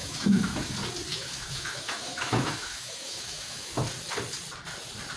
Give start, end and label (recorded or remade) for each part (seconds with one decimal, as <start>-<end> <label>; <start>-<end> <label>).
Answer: 0.0-0.7 remade; 0.7-1.1 recorded; 1.1-3.7 remade; 3.7-5.2 recorded